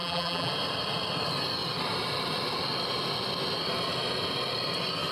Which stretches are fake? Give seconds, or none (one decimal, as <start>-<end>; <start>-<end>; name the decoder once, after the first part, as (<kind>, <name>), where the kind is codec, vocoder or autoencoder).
0.0-0.5 (vocoder, BigVGAN v2)